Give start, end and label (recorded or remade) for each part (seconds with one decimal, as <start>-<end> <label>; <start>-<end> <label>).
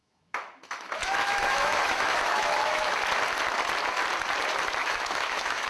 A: 0.0-3.0 remade; 3.0-4.8 recorded; 4.8-5.7 remade